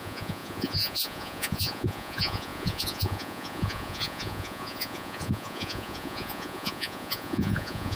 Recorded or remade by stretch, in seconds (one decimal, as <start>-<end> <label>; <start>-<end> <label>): 0.0-8.0 remade